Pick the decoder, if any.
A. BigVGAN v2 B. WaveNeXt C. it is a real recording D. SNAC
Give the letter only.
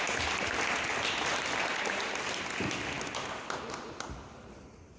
C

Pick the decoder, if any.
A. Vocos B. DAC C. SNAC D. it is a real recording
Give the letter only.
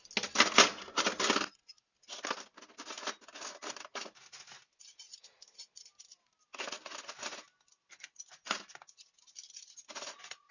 D